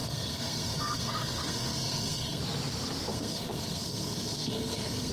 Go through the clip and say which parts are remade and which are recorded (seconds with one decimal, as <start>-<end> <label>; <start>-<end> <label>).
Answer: 0.0-2.4 remade; 2.4-3.1 recorded; 3.1-5.1 remade